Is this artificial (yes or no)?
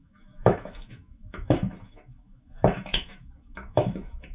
yes